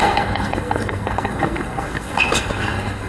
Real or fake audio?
fake